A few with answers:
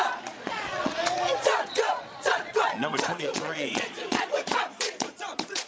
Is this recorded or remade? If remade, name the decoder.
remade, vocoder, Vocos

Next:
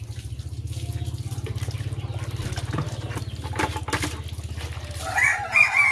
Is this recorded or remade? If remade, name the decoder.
recorded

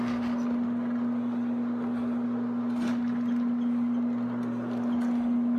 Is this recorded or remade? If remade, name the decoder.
recorded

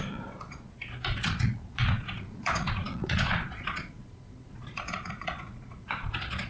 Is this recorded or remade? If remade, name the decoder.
remade, vocoder, Vocos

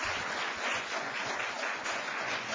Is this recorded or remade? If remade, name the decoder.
remade, vocoder, Vocos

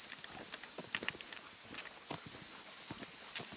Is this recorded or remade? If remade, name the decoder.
recorded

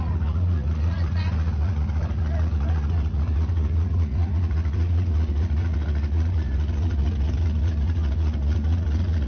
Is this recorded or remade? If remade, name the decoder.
remade, vocoder, Vocos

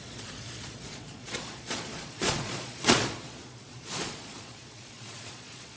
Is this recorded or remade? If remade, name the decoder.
remade, vocoder, Vocos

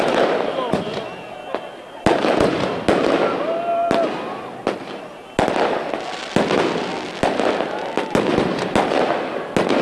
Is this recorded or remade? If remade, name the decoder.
recorded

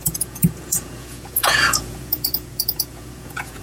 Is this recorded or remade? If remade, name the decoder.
remade, vocoder, Vocos